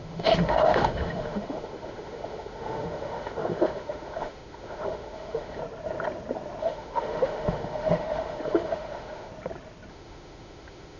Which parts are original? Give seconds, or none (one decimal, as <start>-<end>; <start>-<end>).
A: 5.6-6.6; 9.3-9.9